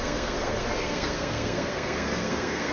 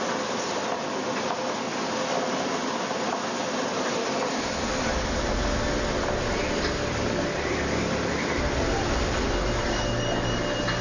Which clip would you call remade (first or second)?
first